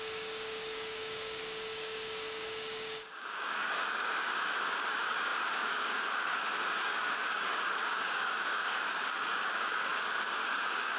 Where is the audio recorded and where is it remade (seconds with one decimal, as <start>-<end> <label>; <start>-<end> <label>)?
0.0-11.0 remade